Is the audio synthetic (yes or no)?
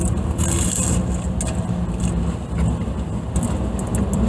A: no